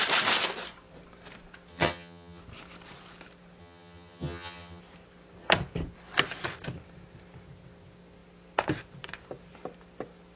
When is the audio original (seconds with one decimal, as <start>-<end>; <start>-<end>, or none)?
0.0-1.7; 2.4-3.6; 4.8-10.4